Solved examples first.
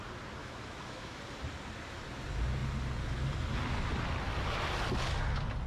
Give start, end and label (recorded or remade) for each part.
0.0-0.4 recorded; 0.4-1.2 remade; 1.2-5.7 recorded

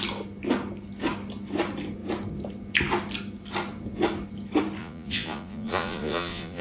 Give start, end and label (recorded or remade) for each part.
0.0-4.8 recorded; 4.8-6.6 remade

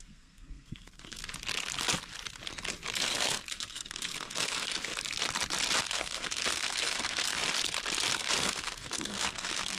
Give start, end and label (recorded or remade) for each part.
0.0-1.2 remade; 1.2-2.9 recorded; 2.9-4.9 remade; 4.9-5.8 recorded; 5.8-7.4 remade; 7.4-8.1 recorded; 8.1-9.8 remade

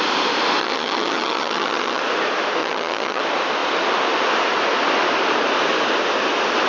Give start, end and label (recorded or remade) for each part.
0.0-0.6 recorded; 0.6-2.0 remade; 2.0-2.6 recorded; 2.6-3.2 remade; 3.2-6.7 recorded

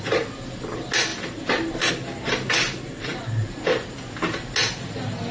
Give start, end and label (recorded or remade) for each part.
0.0-5.3 recorded

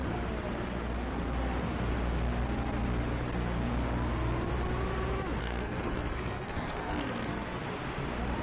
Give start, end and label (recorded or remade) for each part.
0.0-5.4 recorded; 5.4-7.6 remade; 7.6-8.4 recorded

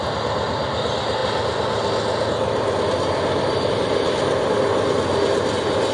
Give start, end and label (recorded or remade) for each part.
0.0-5.9 recorded

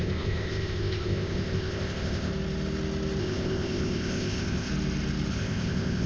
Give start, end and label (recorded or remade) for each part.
0.0-2.3 remade; 2.3-3.2 recorded; 3.2-4.7 remade; 4.7-5.3 recorded; 5.3-6.1 remade